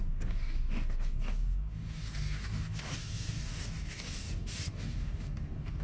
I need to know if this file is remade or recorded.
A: remade